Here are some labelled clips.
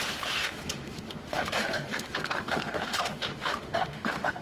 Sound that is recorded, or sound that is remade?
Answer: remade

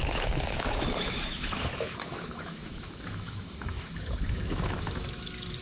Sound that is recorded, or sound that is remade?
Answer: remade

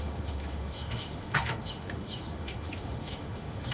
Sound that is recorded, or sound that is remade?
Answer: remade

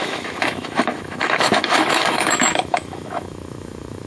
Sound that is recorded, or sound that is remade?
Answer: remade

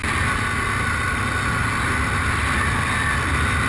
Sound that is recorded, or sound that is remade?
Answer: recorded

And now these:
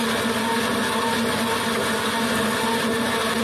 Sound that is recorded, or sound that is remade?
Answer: recorded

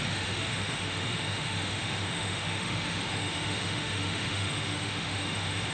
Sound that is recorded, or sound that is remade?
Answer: remade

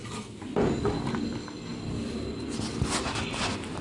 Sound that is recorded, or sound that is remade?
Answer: recorded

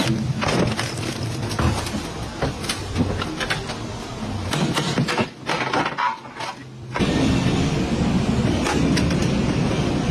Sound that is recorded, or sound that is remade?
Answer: recorded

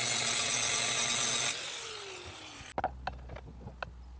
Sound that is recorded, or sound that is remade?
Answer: recorded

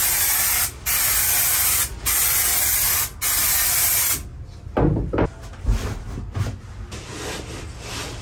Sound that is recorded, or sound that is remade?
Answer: recorded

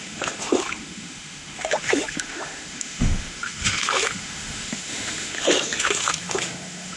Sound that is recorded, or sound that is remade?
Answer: remade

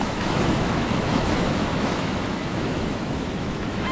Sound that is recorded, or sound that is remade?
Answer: remade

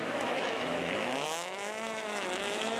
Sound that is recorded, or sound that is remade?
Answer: remade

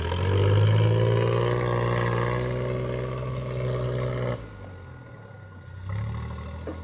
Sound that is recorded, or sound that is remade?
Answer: recorded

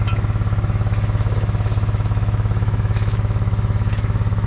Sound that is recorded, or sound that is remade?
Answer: remade